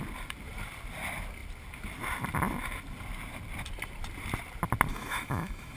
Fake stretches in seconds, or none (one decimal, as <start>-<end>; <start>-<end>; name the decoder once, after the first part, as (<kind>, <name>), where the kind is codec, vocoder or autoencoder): 4.9-5.8 (autoencoder, DAC-VAE)

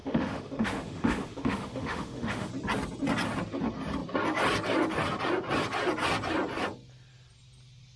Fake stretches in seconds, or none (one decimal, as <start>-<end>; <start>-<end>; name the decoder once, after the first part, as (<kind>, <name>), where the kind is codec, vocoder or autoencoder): 0.0-2.5 (autoencoder, DAC-VAE)

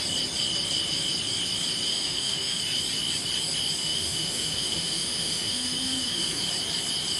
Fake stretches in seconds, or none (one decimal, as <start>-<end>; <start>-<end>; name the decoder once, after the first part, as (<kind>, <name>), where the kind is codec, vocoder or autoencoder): 1.9-2.6 (autoencoder, DAC-VAE); 3.8-6.5

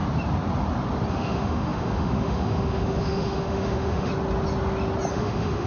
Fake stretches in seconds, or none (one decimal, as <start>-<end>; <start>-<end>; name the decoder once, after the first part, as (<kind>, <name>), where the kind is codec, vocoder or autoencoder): 1.1-4.1 (autoencoder, DAC-VAE); 5.1-5.7

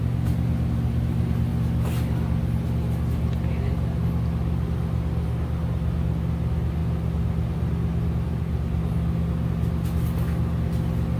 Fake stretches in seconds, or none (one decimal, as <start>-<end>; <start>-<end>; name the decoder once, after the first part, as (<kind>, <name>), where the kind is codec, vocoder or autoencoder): none